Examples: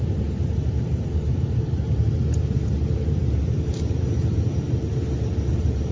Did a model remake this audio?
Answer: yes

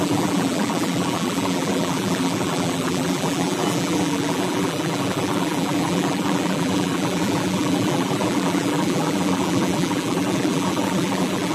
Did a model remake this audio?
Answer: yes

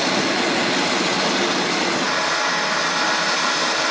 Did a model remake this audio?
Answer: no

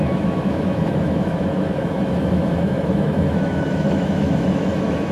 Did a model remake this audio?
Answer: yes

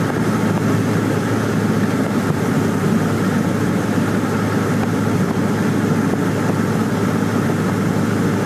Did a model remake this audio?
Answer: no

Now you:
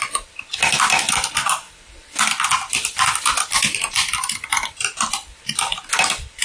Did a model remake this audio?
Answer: no